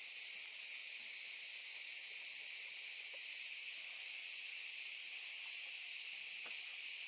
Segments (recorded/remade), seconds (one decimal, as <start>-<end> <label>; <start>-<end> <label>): 0.0-7.1 recorded

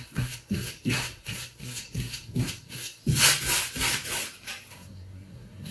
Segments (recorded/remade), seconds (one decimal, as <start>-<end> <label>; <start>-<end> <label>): 0.0-3.0 remade; 3.0-4.7 recorded; 4.7-5.7 remade

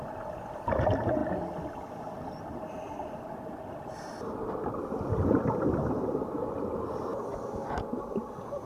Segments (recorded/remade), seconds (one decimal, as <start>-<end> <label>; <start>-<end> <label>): 0.0-8.7 recorded

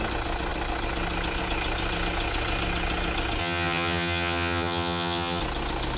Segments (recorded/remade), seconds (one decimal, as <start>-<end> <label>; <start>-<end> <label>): 0.0-3.4 recorded; 3.4-5.4 remade; 5.4-6.0 recorded

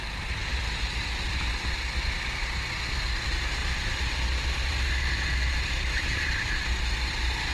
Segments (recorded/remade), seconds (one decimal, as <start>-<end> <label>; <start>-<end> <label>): 0.0-3.6 recorded; 3.6-6.3 remade; 6.3-7.5 recorded

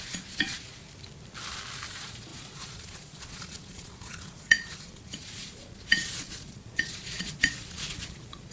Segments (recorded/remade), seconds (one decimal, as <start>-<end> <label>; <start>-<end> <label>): 0.0-0.8 remade; 0.8-1.9 recorded; 1.9-8.5 remade

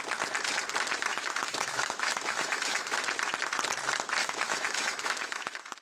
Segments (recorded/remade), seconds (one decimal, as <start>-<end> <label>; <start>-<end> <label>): 0.0-1.1 recorded; 1.1-3.0 remade; 3.0-4.2 recorded; 4.2-5.8 remade